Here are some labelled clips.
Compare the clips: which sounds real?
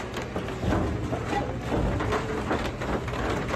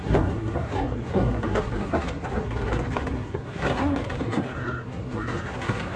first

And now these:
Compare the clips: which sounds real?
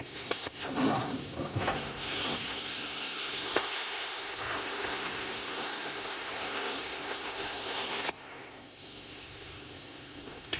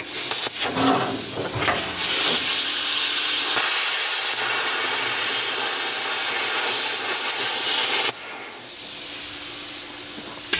second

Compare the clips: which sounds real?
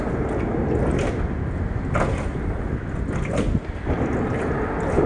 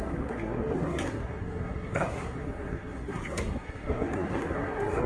first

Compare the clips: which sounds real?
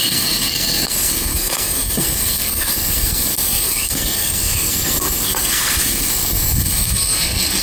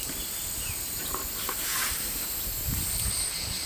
second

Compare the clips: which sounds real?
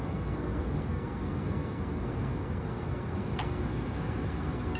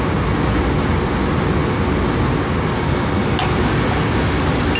second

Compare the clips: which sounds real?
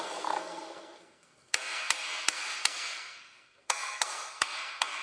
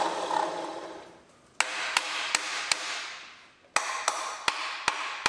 second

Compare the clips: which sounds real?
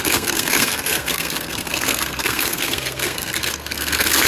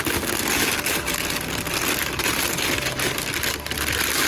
second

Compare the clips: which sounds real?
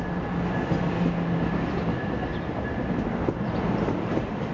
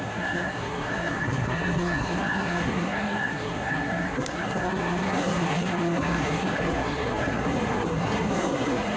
first